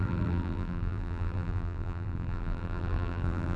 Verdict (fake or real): fake